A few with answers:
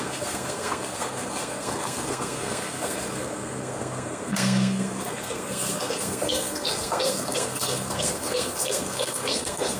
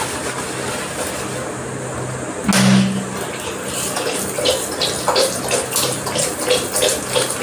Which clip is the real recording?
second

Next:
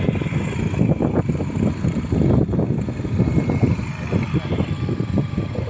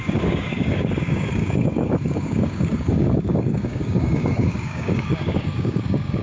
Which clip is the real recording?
first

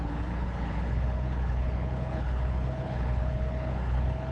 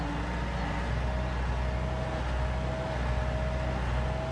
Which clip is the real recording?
second